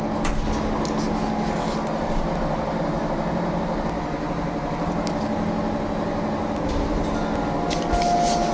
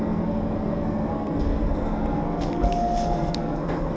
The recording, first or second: first